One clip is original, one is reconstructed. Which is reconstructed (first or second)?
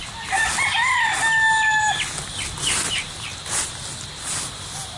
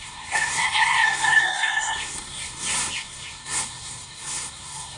second